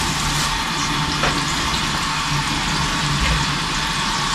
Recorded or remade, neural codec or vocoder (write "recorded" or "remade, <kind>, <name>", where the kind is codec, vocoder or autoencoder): recorded